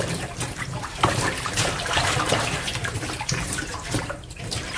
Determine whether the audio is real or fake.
fake